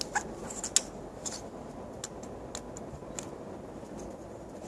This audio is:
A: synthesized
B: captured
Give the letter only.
B